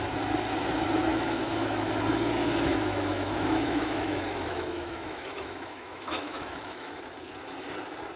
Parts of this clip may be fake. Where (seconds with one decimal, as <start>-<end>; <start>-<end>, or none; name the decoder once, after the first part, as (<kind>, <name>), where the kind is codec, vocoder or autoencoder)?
1.1-1.9 (autoencoder, DAC-VAE); 2.7-6.9